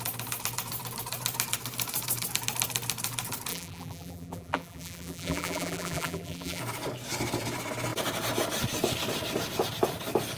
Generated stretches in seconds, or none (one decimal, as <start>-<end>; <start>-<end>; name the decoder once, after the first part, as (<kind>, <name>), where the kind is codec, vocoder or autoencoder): 3.5-6.6 (vocoder, BigVGAN v2)